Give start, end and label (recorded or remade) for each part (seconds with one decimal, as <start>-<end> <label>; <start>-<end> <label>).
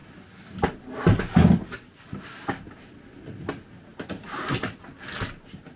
0.0-5.8 recorded